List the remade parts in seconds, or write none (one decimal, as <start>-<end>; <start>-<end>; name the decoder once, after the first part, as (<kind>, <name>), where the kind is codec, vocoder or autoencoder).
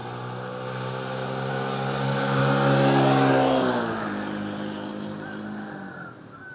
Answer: 1.5-2.4 (codec, DAC); 3.3-4.9